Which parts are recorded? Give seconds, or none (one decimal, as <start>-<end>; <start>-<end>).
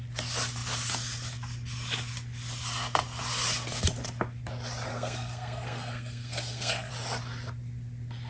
0.0-4.9; 6.9-8.3